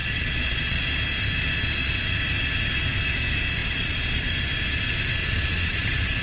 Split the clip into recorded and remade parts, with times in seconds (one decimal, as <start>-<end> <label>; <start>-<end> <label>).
0.0-0.8 remade; 0.8-3.6 recorded; 3.6-4.3 remade; 4.3-5.2 recorded; 5.2-6.2 remade